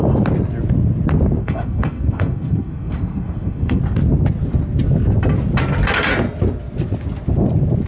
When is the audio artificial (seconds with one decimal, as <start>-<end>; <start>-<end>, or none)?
1.4-3.8